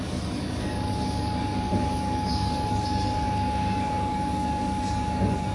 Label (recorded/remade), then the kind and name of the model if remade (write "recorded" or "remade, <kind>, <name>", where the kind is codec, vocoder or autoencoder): remade, codec, DAC